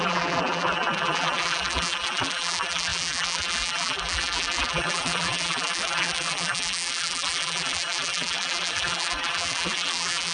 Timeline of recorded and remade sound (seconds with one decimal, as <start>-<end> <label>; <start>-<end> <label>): 0.0-10.3 remade